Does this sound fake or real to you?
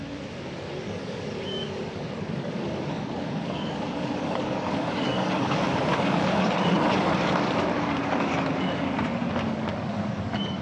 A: fake